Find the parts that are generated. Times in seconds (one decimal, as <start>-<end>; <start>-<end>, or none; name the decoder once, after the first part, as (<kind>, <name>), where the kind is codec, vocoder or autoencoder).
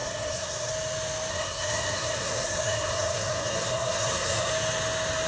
0.0-0.7 (codec, SNAC); 1.3-4.5